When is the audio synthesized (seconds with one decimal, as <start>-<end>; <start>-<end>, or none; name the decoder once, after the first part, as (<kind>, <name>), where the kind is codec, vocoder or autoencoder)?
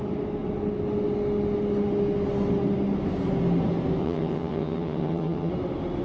4.0-5.5 (vocoder, HiFi-GAN)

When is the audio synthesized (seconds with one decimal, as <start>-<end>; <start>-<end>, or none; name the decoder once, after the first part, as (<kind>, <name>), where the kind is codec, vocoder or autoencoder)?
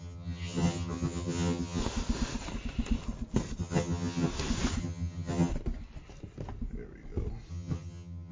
0.0-1.8 (vocoder, HiFi-GAN); 3.6-4.3; 4.8-5.5; 7.5-8.3